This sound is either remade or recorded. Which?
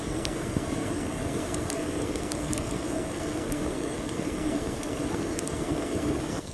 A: remade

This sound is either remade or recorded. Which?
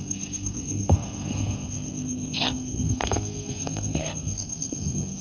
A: remade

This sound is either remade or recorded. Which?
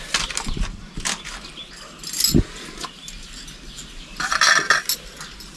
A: recorded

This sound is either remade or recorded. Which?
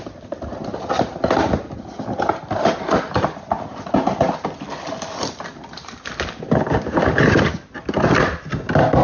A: recorded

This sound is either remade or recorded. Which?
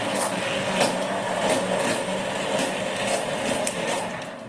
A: recorded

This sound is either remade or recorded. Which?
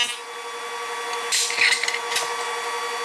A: recorded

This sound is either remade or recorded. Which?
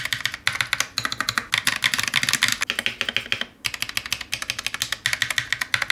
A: recorded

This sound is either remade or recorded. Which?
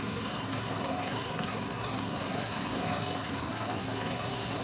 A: remade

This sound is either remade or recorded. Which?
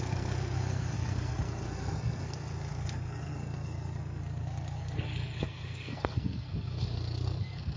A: remade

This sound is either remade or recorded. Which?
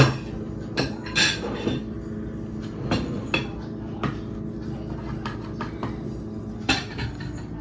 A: recorded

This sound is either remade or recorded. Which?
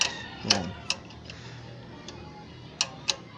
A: recorded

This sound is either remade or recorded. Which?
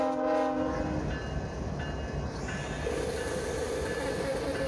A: recorded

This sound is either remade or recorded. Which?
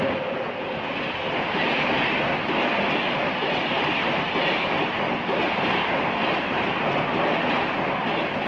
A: recorded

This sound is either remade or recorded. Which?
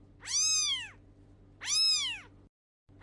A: recorded